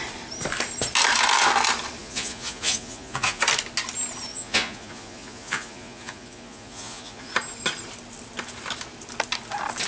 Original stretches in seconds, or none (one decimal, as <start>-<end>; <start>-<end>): 0.0-2.0; 3.4-4.3; 7.3-9.9